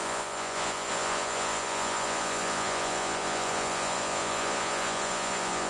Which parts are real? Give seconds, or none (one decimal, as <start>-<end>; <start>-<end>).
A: none